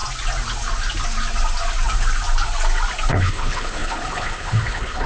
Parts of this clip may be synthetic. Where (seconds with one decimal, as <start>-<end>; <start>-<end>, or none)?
3.1-5.1